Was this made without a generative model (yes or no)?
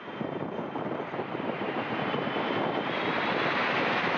yes